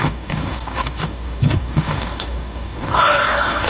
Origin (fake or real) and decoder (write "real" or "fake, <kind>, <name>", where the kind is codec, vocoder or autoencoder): fake, codec, DAC